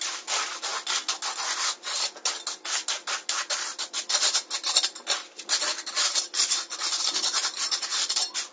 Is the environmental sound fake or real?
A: real